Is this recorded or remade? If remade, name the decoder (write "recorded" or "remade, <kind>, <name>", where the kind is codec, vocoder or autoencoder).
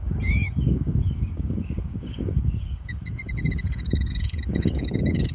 remade, codec, DAC